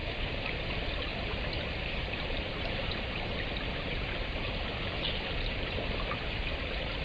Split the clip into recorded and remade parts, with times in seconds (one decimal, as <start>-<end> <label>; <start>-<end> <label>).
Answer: 0.0-0.5 remade; 0.5-1.1 recorded; 1.1-3.4 remade; 3.4-7.0 recorded